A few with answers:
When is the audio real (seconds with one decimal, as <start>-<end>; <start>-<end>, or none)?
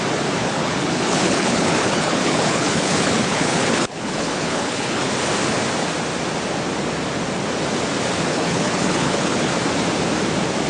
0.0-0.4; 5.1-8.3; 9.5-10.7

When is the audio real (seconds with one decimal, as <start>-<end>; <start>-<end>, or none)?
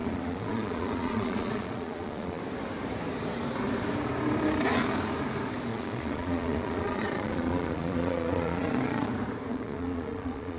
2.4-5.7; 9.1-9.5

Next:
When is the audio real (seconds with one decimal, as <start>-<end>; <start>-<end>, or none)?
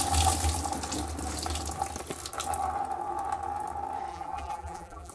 0.0-4.1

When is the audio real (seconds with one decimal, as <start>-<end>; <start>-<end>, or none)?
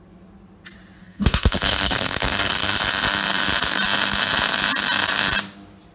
0.0-1.0; 2.8-5.9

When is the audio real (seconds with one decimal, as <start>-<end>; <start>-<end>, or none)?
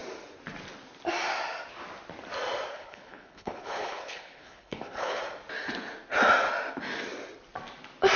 0.0-2.7; 5.2-8.2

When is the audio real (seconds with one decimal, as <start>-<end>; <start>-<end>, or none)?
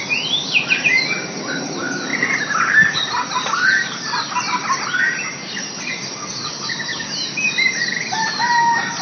0.0-9.0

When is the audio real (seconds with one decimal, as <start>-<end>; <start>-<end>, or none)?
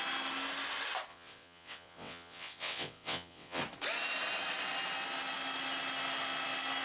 0.0-1.1; 3.6-6.8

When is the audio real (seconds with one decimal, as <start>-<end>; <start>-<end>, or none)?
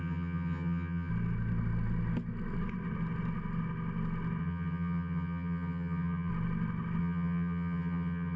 1.1-4.4; 6.3-7.0